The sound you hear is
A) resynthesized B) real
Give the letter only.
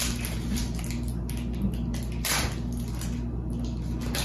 B